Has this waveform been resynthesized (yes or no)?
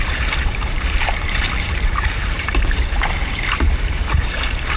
yes